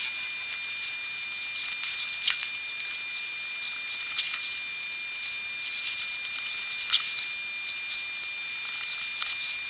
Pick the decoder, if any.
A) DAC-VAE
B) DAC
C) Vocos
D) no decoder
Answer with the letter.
D